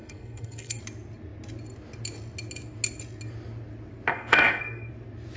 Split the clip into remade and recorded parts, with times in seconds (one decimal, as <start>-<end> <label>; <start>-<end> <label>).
0.0-0.8 remade; 0.8-4.1 recorded; 4.1-4.9 remade; 4.9-5.4 recorded